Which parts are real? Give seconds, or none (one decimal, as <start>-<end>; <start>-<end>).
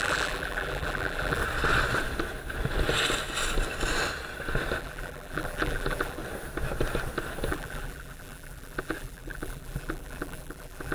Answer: 1.4-4.8; 6.2-7.5